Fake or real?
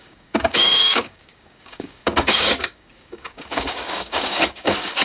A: fake